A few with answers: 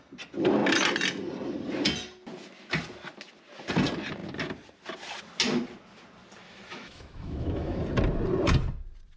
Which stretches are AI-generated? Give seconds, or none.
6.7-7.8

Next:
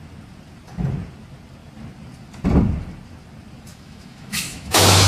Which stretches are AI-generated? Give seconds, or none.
3.7-5.1

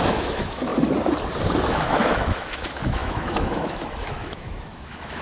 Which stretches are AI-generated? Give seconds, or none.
0.0-0.7; 1.7-5.2

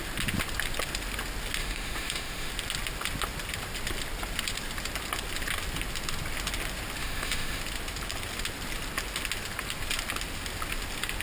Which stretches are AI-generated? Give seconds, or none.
1.6-2.5; 7.0-7.6

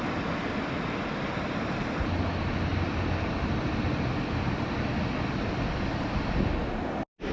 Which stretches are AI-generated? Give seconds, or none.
none